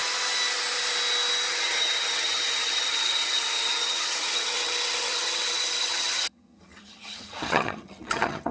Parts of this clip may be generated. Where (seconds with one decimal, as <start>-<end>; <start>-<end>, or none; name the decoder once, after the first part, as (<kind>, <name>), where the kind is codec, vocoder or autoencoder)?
1.5-8.5 (vocoder, HiFi-GAN)